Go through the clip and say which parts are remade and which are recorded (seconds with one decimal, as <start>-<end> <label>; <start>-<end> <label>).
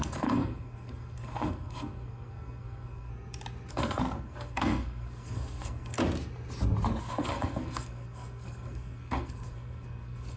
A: 0.0-3.1 remade; 3.1-3.7 recorded; 3.7-6.0 remade; 6.0-7.0 recorded; 7.0-10.4 remade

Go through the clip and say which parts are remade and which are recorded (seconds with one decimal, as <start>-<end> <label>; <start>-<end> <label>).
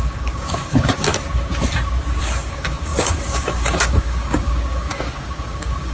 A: 0.0-1.1 remade; 1.1-2.2 recorded; 2.2-5.9 remade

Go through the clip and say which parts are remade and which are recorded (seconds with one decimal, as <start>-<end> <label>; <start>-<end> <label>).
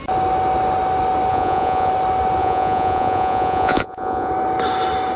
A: 0.0-1.3 recorded; 1.3-1.9 remade; 1.9-2.4 recorded; 2.4-4.3 remade; 4.3-5.2 recorded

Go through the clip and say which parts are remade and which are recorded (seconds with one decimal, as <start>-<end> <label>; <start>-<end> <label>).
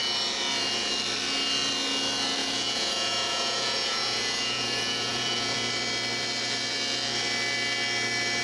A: 0.0-2.4 recorded; 2.4-5.7 remade; 5.7-8.4 recorded